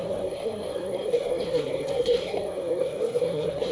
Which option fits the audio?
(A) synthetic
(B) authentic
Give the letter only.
A